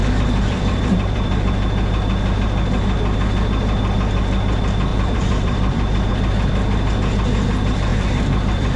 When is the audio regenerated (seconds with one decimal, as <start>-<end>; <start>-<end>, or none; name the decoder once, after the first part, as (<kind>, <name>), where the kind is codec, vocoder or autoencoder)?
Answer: 0.0-1.5 (vocoder, BigVGAN v2); 4.9-6.1; 7.9-8.8